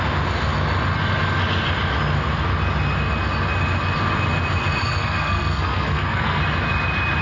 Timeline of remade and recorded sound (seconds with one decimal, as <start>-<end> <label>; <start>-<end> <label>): 0.0-4.8 recorded; 4.8-6.4 remade; 6.4-7.2 recorded